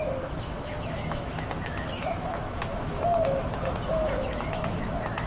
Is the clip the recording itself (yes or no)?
no